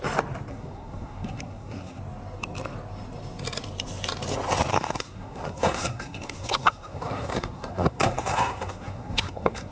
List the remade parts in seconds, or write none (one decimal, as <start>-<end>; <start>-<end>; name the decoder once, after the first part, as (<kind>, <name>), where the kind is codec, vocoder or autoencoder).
0.5-2.0 (codec, SNAC); 4.7-9.7